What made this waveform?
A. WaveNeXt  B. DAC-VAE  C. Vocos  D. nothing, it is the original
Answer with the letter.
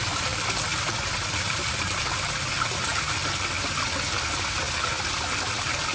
D